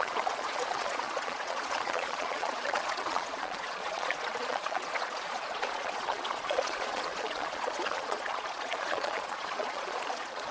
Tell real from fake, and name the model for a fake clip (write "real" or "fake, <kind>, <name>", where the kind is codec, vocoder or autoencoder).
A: fake, vocoder, Vocos